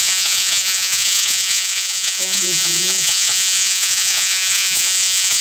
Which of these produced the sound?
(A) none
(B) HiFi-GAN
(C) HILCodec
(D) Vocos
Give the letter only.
D